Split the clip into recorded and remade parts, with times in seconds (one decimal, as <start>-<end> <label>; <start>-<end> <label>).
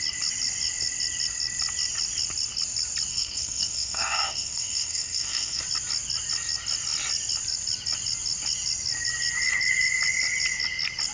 0.0-3.1 recorded; 3.1-5.6 remade; 5.6-11.1 recorded